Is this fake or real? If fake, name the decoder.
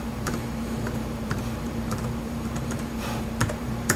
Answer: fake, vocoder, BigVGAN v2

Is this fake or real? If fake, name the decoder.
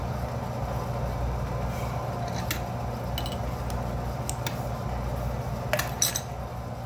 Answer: real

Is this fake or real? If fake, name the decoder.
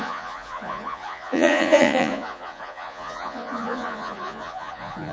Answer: fake, vocoder, Vocos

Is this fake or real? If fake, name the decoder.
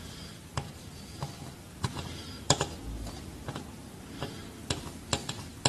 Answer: fake, vocoder, BigVGAN v2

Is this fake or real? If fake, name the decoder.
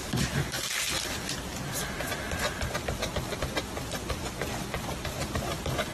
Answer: real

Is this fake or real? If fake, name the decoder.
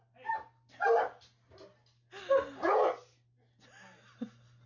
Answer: real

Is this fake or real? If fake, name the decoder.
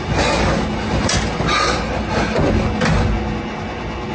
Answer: real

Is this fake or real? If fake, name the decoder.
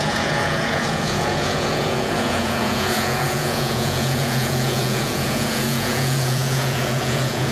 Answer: fake, vocoder, Vocos